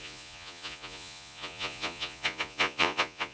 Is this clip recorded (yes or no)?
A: no